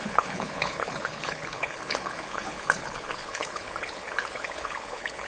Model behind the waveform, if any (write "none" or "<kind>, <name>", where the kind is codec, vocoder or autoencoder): codec, HILCodec